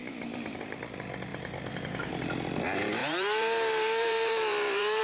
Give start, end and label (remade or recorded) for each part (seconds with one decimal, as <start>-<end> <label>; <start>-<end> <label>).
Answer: 0.0-0.8 remade; 0.8-1.3 recorded; 1.3-2.1 remade; 2.1-3.0 recorded; 3.0-5.0 remade